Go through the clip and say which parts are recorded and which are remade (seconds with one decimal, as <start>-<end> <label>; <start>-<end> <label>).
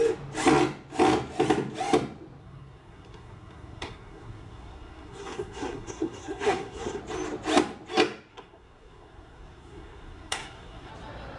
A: 0.0-2.4 recorded; 2.4-7.0 remade; 7.0-8.3 recorded; 8.3-10.9 remade; 10.9-11.4 recorded